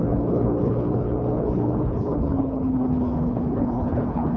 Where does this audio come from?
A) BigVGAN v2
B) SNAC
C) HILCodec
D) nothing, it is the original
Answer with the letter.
C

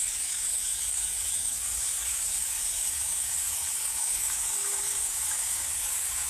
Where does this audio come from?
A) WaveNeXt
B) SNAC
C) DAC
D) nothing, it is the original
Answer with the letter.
C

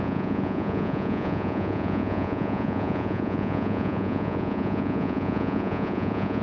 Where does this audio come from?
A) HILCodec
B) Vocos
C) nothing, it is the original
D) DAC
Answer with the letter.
B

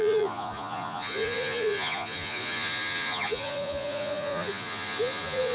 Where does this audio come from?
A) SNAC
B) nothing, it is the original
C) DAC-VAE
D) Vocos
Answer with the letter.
D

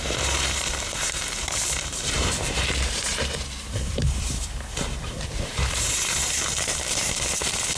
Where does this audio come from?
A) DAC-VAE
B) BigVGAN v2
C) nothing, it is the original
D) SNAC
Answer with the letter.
B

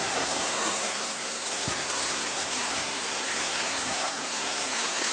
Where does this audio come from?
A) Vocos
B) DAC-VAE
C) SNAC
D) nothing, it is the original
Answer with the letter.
C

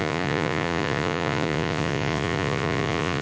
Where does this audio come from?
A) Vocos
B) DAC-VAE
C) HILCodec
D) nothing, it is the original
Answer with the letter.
A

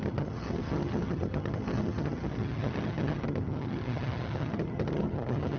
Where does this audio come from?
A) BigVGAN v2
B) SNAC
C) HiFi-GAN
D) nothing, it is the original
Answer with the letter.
C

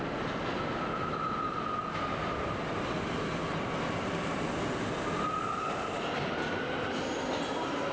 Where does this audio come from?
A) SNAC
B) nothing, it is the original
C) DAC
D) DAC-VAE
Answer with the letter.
B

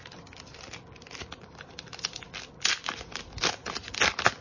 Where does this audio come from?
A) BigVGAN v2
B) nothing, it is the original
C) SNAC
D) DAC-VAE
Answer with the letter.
B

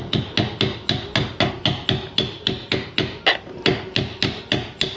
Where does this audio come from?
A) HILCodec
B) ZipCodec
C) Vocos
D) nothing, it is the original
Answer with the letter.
D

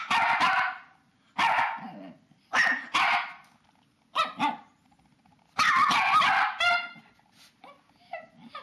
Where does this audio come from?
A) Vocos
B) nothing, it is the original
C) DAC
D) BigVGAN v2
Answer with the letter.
B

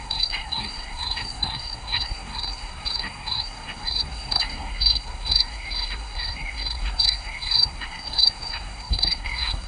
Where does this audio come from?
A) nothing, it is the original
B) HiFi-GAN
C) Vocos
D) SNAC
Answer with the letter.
D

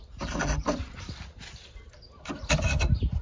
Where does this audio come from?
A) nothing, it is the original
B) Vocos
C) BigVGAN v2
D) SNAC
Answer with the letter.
A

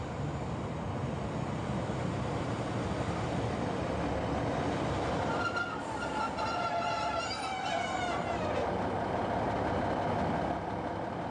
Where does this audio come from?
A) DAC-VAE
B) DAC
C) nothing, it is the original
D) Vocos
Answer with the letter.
C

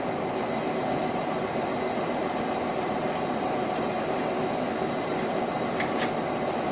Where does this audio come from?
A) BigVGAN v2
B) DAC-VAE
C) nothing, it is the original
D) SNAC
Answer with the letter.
C